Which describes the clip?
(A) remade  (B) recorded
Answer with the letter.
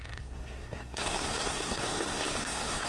A